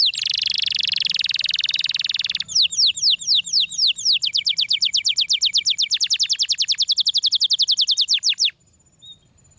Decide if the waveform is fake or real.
real